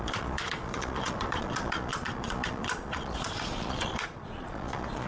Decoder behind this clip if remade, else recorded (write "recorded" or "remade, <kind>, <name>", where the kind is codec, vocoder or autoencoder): remade, vocoder, Vocos